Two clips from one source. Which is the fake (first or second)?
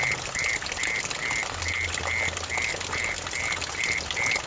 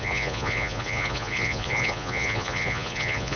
second